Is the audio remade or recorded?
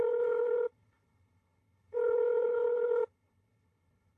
remade